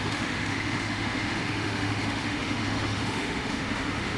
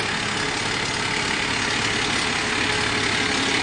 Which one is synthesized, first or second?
first